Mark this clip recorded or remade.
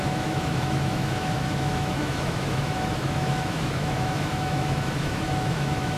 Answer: remade